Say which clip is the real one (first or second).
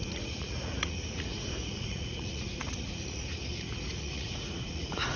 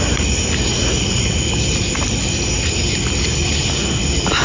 second